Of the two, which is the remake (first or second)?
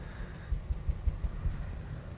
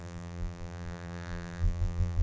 second